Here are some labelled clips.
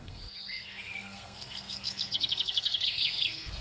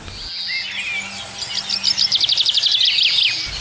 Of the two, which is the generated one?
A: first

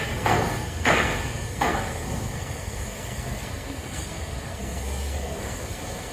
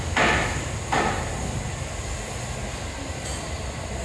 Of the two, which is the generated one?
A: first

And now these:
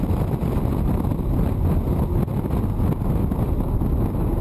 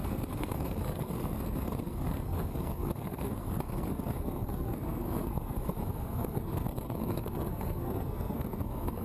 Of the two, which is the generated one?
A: second